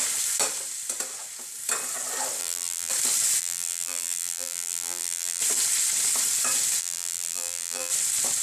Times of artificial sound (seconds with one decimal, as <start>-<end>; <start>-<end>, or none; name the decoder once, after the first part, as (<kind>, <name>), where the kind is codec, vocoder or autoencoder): 2.4-2.9 (vocoder, BigVGAN v2); 3.4-5.4; 6.8-7.9